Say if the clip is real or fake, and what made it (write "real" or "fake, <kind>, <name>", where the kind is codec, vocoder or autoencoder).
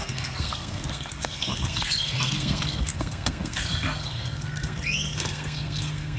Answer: fake, codec, SNAC